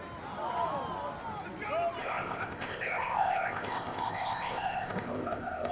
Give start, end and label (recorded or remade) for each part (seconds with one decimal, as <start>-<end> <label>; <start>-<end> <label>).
0.0-2.0 recorded; 2.0-5.7 remade